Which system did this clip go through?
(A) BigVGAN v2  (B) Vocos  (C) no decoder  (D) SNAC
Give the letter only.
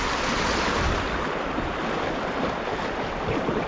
A